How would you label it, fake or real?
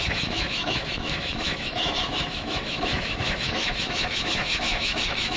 fake